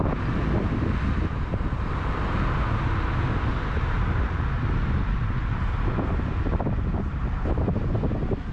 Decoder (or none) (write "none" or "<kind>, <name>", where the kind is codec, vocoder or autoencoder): none